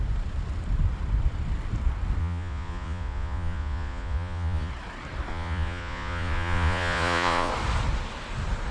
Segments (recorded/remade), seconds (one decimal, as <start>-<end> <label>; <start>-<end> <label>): 0.0-2.2 recorded; 2.2-4.7 remade; 4.7-5.3 recorded; 5.3-7.5 remade; 7.5-8.7 recorded

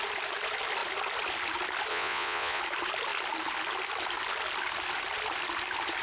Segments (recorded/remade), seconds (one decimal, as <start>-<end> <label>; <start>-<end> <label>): 0.0-1.9 recorded; 1.9-2.6 remade; 2.6-6.0 recorded

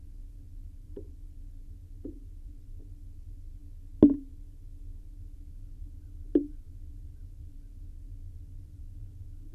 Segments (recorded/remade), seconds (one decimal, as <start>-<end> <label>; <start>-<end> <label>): 0.0-3.6 remade; 3.6-5.0 recorded; 5.0-9.5 remade